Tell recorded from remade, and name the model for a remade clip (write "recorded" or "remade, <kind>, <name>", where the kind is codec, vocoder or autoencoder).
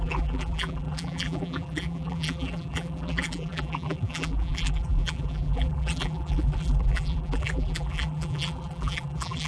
remade, vocoder, BigVGAN v2